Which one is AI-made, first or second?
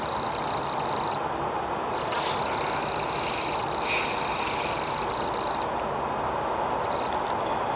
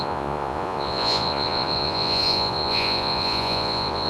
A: second